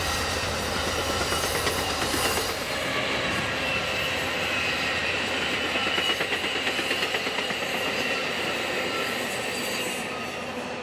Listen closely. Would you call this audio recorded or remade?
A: recorded